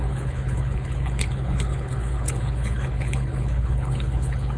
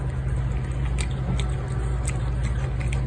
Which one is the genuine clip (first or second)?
second